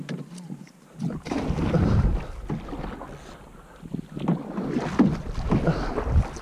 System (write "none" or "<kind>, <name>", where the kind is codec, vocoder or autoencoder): none